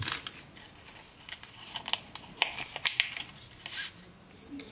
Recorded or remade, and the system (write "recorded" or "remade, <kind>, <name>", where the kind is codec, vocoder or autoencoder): recorded